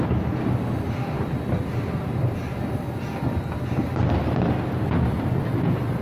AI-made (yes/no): no